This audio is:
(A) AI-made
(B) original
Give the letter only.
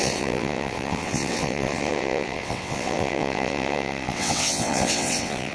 A